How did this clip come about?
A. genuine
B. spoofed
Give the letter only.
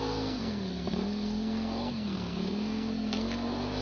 B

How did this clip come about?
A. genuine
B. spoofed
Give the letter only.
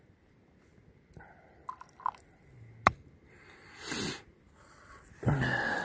A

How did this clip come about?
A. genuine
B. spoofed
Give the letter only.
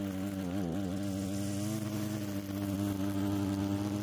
A